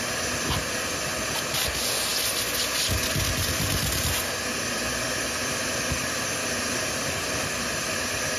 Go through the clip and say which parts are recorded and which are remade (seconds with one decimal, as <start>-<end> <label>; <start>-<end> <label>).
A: 0.0-8.4 recorded